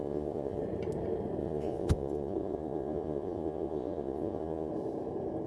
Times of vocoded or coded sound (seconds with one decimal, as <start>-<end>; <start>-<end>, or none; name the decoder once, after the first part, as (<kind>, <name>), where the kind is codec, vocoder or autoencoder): 0.0-0.6 (vocoder, Vocos); 1.4-4.7